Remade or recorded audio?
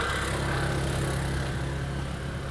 recorded